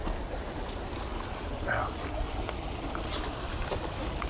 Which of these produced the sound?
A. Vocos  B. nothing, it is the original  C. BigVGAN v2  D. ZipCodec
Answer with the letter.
B